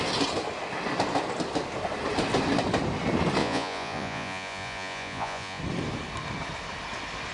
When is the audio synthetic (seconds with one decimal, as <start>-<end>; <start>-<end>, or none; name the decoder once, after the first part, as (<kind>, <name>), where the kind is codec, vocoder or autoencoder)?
3.4-5.6 (vocoder, Vocos)